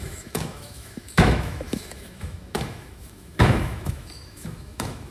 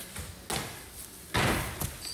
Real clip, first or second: second